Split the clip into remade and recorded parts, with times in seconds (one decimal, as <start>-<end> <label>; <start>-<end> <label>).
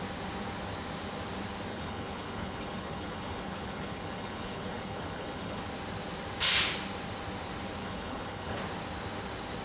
0.0-1.7 recorded; 1.7-5.6 remade; 5.6-7.8 recorded; 7.8-8.6 remade; 8.6-9.6 recorded